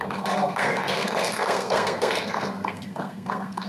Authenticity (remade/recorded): remade